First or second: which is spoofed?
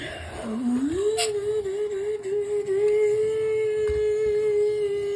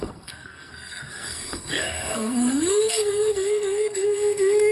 second